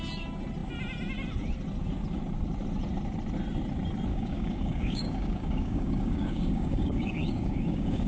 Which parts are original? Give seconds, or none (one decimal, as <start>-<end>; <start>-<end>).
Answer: 0.0-4.1